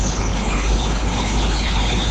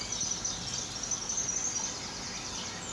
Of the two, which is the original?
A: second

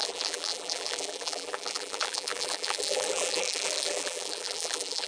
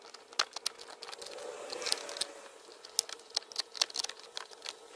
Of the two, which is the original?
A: second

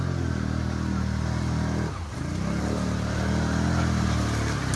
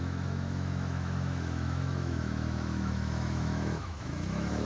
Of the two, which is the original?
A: first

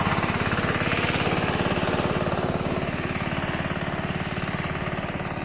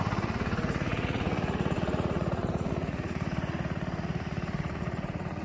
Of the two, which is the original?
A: first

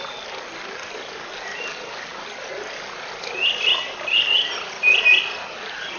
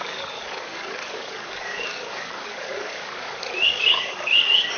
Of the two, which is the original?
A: first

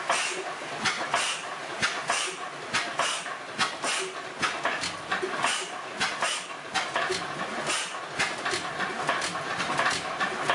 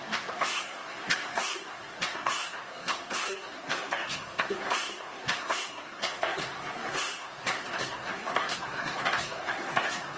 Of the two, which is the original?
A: first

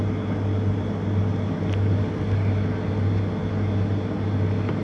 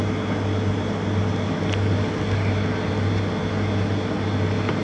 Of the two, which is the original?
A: second